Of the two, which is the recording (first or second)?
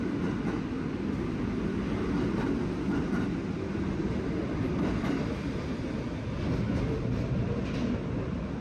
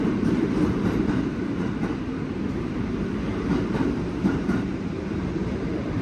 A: first